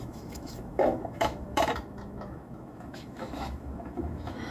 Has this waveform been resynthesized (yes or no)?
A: yes